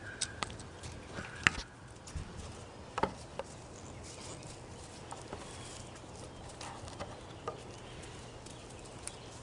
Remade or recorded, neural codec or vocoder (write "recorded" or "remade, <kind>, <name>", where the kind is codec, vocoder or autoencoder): recorded